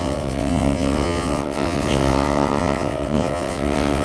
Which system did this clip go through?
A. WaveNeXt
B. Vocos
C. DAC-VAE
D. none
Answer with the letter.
A